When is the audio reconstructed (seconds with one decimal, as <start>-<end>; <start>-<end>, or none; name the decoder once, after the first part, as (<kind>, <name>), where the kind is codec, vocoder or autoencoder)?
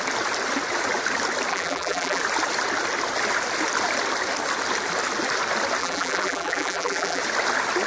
1.5-2.2 (vocoder, BigVGAN v2); 5.8-7.2